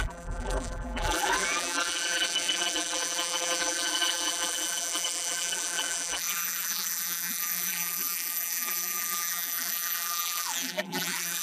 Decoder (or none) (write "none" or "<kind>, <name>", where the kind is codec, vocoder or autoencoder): vocoder, BigVGAN v2